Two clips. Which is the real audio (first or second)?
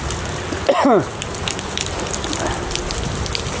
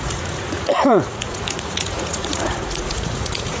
first